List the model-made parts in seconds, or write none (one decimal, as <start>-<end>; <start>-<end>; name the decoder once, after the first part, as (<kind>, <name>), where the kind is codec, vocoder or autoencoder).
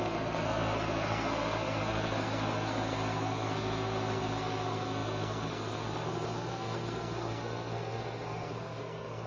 0.0-9.3 (codec, SNAC)